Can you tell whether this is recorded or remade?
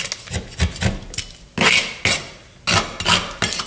recorded